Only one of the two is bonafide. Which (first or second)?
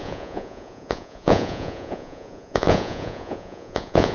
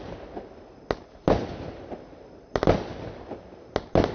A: second